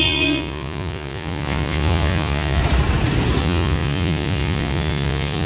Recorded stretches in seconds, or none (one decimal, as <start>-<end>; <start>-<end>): 2.6-3.4